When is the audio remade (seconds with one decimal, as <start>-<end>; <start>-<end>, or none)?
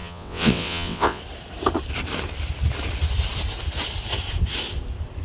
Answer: 0.0-1.2